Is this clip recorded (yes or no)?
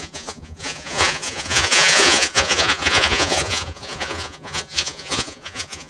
no